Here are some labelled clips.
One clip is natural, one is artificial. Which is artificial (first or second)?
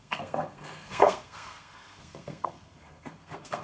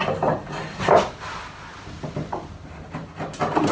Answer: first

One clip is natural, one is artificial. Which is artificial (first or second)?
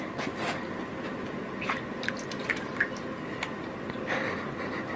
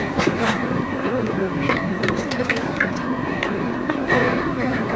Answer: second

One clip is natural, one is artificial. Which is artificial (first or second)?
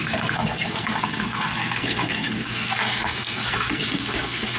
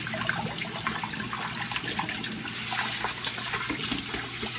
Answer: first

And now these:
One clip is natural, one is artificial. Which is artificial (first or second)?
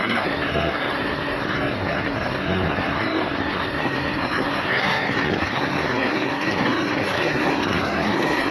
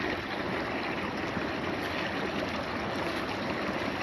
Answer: first